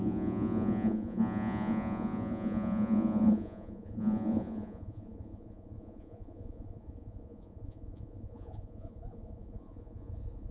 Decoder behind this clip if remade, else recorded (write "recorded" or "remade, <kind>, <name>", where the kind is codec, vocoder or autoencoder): remade, vocoder, Vocos